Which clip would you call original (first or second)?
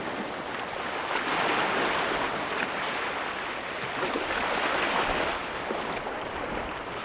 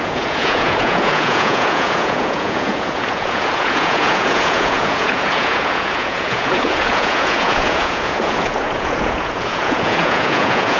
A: first